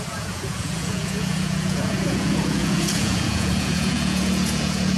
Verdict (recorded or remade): remade